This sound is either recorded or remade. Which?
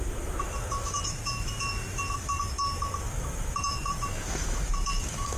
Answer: remade